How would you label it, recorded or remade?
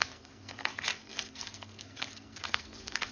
remade